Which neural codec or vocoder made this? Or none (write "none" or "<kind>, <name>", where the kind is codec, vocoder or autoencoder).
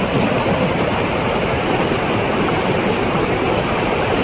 vocoder, BigVGAN v2